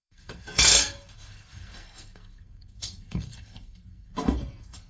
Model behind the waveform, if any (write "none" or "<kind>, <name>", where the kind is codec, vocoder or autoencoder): codec, SNAC